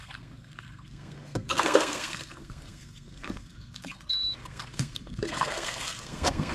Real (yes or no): no